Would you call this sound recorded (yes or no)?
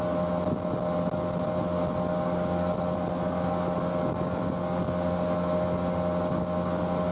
yes